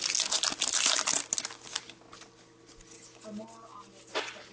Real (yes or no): yes